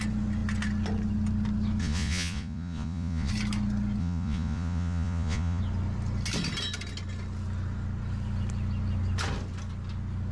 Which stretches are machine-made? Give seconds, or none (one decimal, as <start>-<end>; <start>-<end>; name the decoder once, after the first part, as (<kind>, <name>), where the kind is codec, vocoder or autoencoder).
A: 1.8-3.3 (vocoder, Vocos); 4.0-5.6